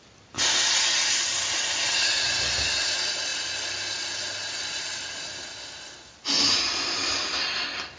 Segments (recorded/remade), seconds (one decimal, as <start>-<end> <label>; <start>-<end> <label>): 0.0-8.0 recorded